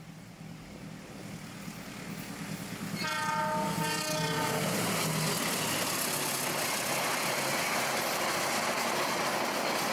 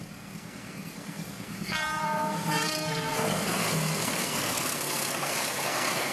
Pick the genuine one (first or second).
first